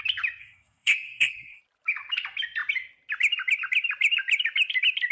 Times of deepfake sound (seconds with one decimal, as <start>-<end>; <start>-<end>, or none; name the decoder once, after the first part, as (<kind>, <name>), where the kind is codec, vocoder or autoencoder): 0.4-1.6 (codec, SNAC)